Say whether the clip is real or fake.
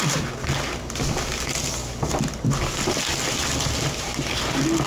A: real